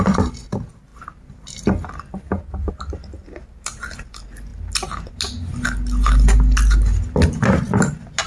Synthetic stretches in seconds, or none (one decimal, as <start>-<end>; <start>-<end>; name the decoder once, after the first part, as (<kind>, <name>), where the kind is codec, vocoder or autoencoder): none